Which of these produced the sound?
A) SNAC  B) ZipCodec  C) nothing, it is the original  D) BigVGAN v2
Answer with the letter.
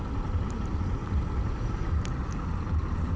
C